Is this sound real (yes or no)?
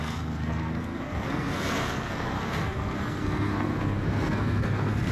no